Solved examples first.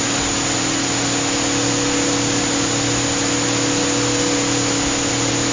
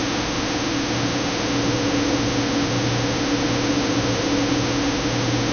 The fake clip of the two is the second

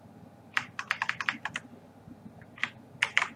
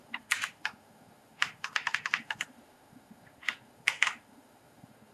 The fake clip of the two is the second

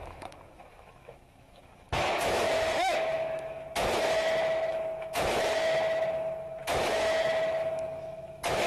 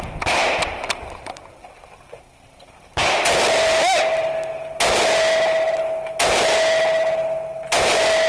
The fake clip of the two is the first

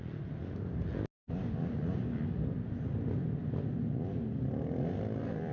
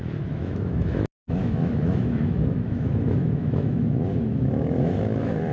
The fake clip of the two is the second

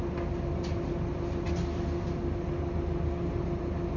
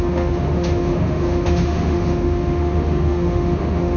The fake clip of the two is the second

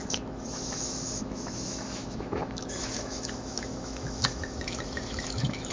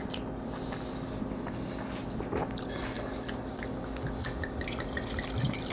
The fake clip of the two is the first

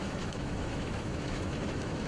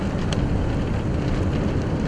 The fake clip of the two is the first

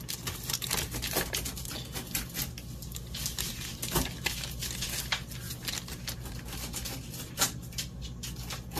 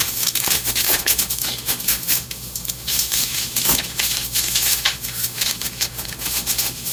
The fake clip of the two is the second